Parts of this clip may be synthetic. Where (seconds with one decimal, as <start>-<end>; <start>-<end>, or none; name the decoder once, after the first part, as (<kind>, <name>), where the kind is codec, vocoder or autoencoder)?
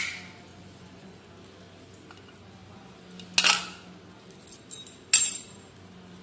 0.5-1.3 (vocoder, Vocos)